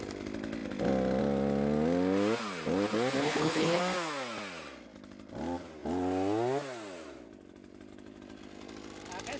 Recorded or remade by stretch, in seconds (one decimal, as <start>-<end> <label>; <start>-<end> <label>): 0.0-3.2 recorded; 3.2-3.8 remade; 3.8-9.4 recorded